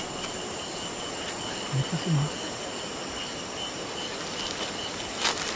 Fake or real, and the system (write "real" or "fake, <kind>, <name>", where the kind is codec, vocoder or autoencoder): real